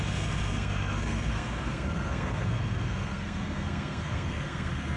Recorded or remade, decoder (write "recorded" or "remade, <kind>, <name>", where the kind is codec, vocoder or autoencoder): remade, codec, SNAC